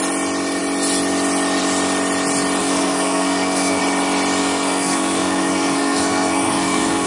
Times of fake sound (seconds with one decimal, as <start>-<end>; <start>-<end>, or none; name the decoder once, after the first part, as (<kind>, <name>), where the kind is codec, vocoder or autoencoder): 2.6-3.8 (codec, SNAC); 4.4-7.1